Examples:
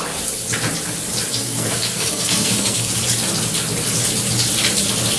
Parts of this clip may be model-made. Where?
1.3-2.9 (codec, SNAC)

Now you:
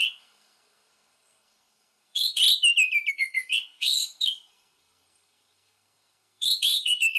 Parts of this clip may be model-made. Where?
0.0-2.4 (codec, SNAC); 3.1-7.2

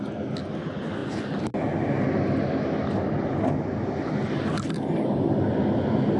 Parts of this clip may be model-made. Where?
none

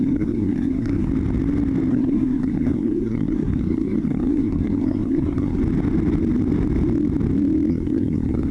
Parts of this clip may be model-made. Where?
0.0-1.1 (codec, SNAC); 1.9-5.6; 7.7-8.5